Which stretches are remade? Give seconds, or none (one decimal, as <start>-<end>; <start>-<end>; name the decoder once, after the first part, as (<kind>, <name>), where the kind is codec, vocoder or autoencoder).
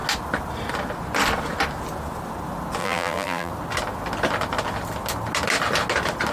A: 2.8-3.5 (vocoder, BigVGAN v2)